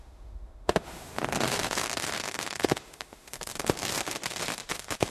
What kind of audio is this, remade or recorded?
remade